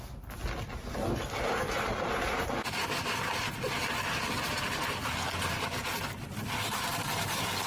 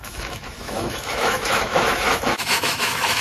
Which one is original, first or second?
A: first